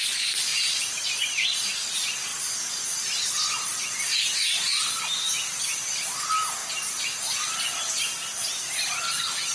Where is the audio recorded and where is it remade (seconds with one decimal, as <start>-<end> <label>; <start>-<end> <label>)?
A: 0.0-0.5 recorded; 0.5-1.2 remade; 1.2-9.5 recorded